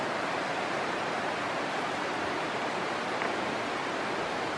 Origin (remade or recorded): recorded